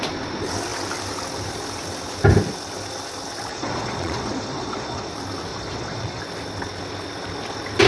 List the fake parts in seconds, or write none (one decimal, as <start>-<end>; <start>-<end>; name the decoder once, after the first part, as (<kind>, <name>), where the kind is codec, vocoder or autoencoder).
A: 3.5-5.1 (vocoder, Vocos); 5.5-6.2